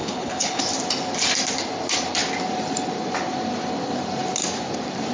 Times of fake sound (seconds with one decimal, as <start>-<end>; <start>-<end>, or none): 0.0-0.6